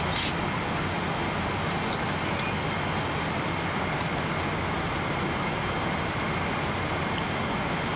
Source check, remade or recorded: recorded